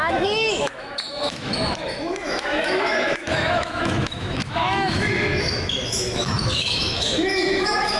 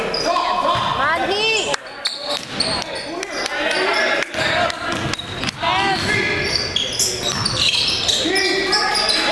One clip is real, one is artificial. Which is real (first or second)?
second